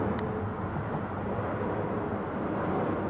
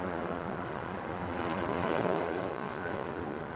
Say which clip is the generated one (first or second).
second